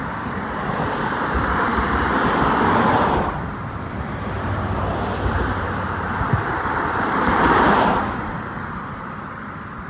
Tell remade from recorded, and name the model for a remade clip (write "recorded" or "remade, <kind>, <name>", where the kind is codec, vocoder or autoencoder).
remade, vocoder, BigVGAN v2